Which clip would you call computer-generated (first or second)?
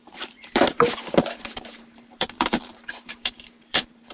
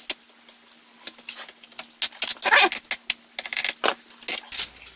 first